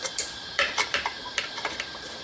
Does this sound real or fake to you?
fake